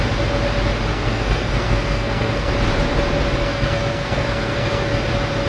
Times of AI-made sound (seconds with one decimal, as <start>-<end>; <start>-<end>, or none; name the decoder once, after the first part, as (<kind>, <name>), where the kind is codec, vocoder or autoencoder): 0.9-2.5 (codec, SNAC); 3.4-4.9